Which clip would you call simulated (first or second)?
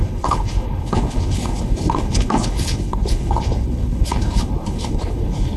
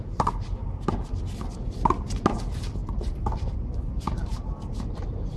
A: first